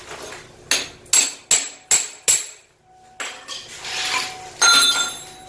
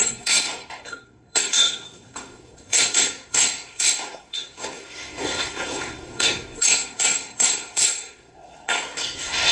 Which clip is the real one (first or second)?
first